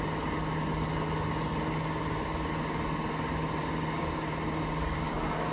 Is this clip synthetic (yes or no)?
no